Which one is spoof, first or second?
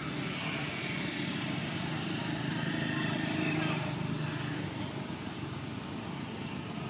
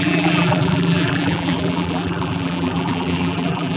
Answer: second